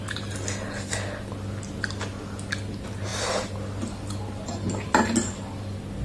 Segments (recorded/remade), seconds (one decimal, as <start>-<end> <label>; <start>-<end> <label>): 0.0-6.0 recorded